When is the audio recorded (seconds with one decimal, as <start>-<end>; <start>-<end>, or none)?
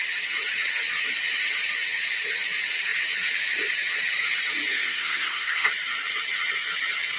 0.0-4.7; 5.7-7.2